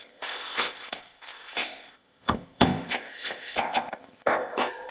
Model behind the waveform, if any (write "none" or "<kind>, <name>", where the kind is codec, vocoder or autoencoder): codec, ZipCodec